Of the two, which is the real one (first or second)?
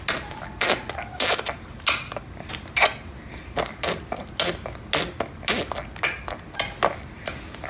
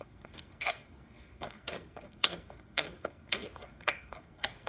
first